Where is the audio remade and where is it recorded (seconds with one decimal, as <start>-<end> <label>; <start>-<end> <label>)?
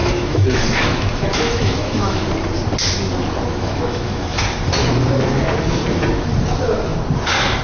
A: 0.0-2.3 remade; 2.3-3.5 recorded; 3.5-4.4 remade; 4.4-7.6 recorded